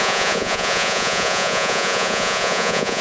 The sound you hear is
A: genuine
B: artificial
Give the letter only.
B